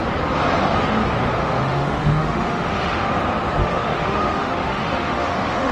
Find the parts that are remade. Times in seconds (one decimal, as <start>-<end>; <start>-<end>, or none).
1.4-3.1; 3.6-5.7